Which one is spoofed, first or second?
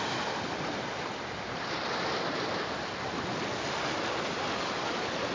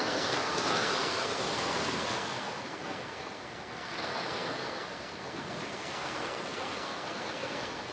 second